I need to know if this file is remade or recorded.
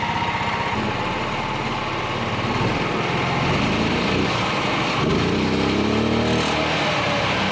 recorded